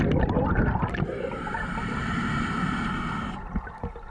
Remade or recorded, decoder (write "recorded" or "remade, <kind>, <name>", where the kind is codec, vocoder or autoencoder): recorded